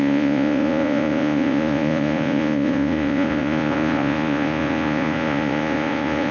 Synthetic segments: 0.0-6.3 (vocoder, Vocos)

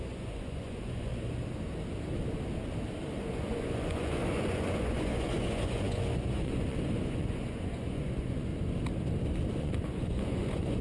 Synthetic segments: 0.0-1.1 (vocoder, Vocos); 3.3-8.5; 9.6-10.8

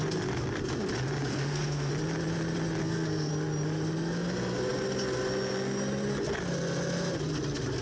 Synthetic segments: 1.3-1.9 (codec, SNAC); 2.8-3.3

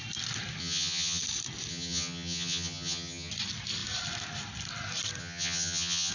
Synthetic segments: 0.6-1.2 (vocoder, HiFi-GAN); 1.7-3.3; 5.2-6.1

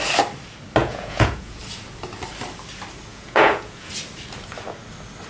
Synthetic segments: 0.8-1.6 (vocoder, Vocos); 3.1-3.9